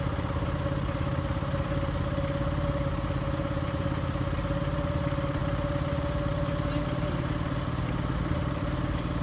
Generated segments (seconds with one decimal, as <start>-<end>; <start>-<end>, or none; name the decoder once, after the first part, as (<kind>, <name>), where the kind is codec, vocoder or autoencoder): none